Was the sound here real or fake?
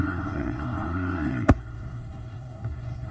fake